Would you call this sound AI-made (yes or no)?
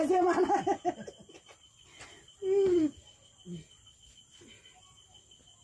no